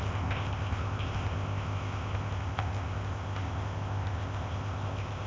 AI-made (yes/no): yes